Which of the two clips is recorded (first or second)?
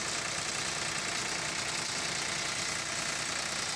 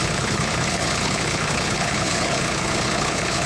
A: first